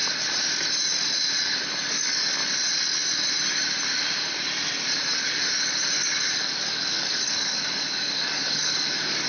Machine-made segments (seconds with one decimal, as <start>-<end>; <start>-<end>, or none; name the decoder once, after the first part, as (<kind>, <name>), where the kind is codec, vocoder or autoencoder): 1.9-2.4 (codec, DAC); 6.0-9.3